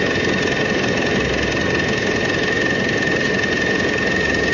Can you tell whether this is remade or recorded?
recorded